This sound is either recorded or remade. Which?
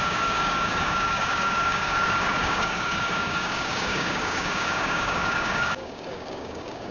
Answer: remade